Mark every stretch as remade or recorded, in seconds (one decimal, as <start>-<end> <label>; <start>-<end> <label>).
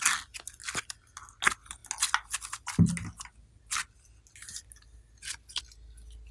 0.0-6.3 recorded